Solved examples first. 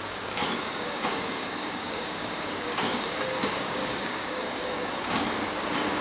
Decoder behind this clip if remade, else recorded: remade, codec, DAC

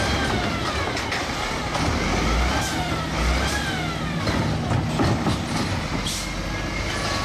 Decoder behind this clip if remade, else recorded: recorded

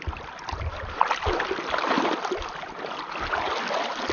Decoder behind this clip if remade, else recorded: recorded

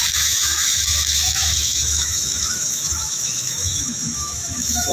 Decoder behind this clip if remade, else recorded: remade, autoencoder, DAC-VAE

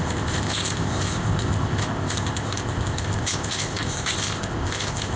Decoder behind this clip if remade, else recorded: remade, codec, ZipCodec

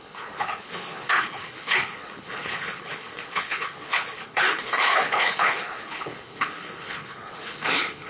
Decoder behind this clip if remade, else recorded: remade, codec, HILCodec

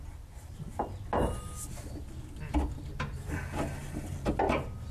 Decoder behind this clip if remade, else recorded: recorded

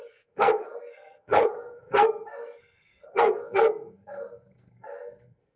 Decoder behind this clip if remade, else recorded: remade, codec, SNAC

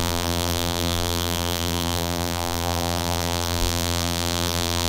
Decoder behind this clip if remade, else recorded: remade, vocoder, BigVGAN v2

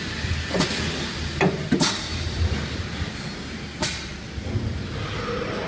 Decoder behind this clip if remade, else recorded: recorded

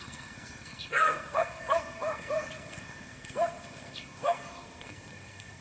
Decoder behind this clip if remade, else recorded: remade, codec, SNAC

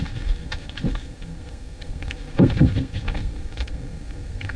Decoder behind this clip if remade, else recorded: remade, codec, SNAC